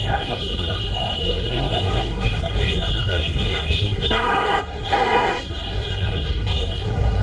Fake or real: fake